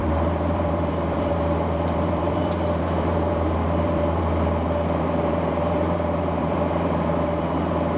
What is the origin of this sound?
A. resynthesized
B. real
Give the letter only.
A